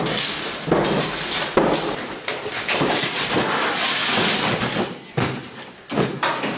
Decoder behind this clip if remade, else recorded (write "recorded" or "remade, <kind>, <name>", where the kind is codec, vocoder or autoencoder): recorded